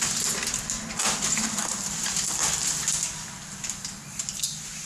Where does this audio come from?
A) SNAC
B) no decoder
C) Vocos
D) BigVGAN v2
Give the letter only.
B